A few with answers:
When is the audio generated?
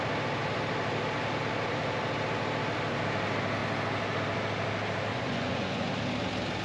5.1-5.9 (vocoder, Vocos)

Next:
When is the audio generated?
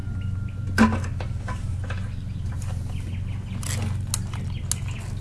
none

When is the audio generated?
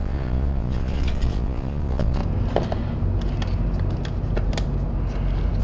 0.0-2.2 (vocoder, Vocos)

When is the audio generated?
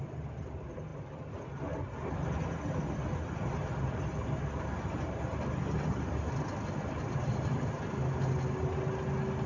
none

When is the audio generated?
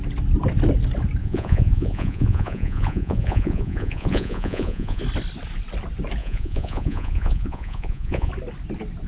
1.2-5.0 (vocoder, Vocos); 6.2-8.3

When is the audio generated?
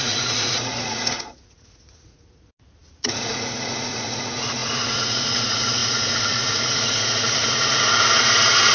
0.0-8.7 (vocoder, Vocos)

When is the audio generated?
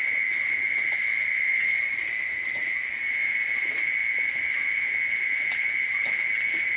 none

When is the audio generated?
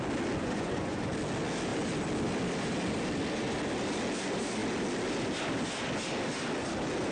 0.4-1.1 (vocoder, Vocos)